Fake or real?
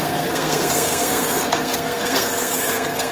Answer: fake